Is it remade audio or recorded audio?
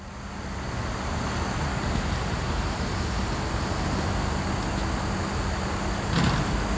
recorded